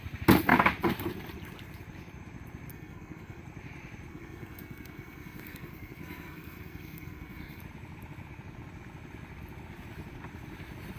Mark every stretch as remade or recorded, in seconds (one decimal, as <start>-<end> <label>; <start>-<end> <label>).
0.0-2.7 recorded; 2.7-3.4 remade; 3.4-4.1 recorded; 4.1-7.6 remade; 7.6-11.0 recorded